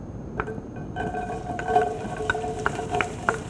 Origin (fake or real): fake